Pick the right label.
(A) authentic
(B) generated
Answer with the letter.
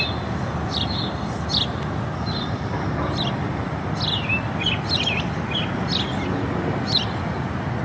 A